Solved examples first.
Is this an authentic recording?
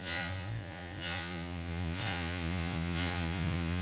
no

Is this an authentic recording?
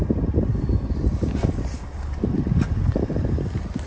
yes